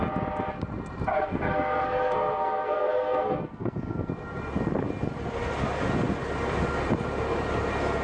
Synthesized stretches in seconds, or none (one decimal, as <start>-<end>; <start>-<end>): 1.1-4.1